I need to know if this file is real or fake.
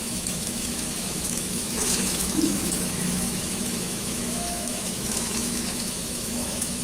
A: fake